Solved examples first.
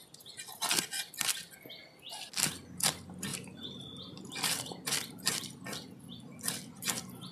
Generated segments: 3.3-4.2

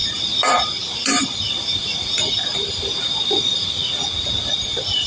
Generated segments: 0.0-3.8; 4.5-5.1

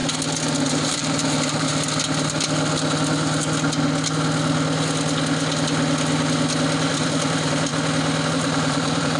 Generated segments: 0.6-1.7; 6.9-7.7; 8.3-9.2

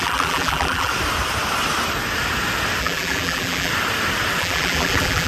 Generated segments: 0.0-0.9; 2.8-3.7; 4.4-5.3

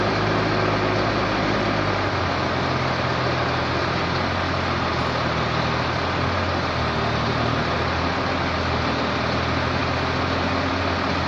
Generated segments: 0.0-9.8; 10.7-11.3